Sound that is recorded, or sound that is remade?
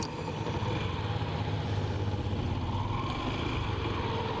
recorded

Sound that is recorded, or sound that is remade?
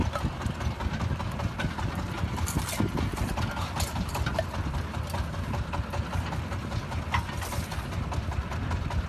recorded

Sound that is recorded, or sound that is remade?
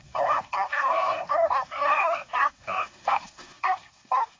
remade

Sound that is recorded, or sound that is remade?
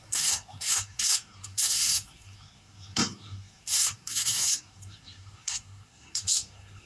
remade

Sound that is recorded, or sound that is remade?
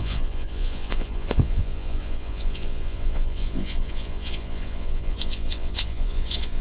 remade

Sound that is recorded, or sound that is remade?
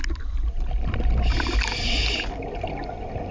recorded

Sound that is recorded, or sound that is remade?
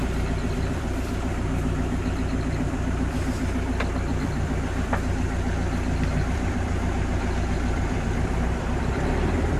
remade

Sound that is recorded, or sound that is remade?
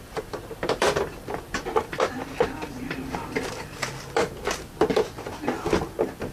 remade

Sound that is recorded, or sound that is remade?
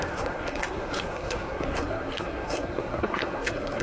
remade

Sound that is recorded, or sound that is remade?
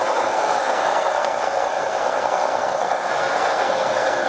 remade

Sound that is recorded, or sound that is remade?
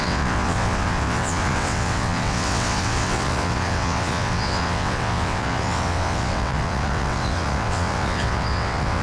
remade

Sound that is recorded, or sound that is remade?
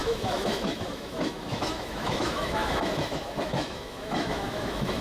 remade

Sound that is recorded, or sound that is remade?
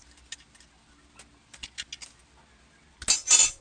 recorded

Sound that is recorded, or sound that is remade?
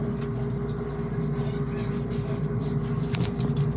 recorded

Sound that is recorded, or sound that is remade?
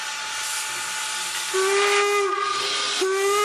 recorded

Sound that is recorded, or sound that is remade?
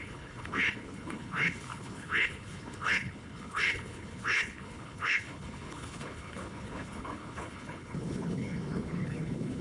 remade